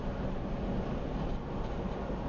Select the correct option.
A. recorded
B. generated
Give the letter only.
A